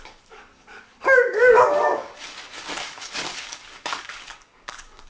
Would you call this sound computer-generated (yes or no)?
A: yes